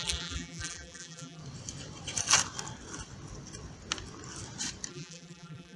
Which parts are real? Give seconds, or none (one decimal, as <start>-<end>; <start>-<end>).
1.4-4.9